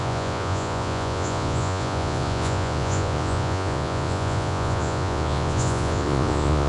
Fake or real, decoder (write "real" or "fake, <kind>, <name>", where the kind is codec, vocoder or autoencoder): fake, vocoder, Vocos